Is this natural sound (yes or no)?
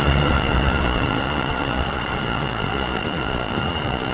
no